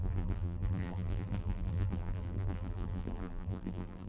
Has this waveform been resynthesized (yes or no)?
yes